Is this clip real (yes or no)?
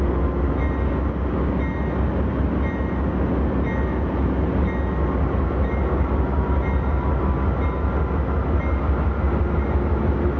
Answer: yes